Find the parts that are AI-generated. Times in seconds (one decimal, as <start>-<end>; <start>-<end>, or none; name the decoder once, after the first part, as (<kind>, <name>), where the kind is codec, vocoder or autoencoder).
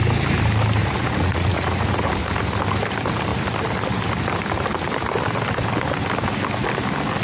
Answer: 0.8-2.1 (vocoder, Vocos)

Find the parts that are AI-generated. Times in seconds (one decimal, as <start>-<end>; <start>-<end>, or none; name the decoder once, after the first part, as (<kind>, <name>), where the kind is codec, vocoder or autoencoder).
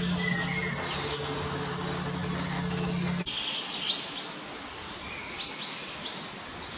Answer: none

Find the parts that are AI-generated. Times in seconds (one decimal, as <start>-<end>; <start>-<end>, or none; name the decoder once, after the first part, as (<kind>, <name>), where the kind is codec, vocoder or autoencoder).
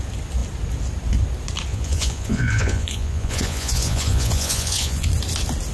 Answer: 1.7-5.1 (vocoder, Vocos)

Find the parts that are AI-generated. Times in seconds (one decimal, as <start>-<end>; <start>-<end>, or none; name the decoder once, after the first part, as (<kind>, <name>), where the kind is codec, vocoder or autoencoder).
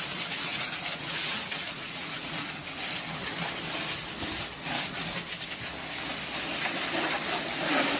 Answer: 0.5-2.8 (vocoder, Vocos)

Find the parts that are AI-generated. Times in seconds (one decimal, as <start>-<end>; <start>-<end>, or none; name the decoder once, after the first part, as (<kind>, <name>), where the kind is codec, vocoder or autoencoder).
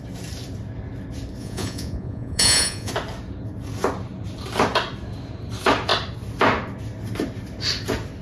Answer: 1.4-2.9 (vocoder, Vocos)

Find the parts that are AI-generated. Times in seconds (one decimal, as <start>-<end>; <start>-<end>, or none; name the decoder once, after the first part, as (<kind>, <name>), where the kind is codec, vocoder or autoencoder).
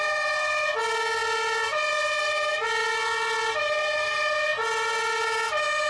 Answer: none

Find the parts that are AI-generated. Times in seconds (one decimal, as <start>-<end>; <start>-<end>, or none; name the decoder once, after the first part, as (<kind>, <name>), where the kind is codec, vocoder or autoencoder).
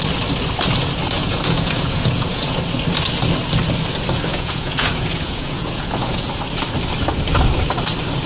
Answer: 1.2-2.6 (vocoder, Vocos); 4.3-6.3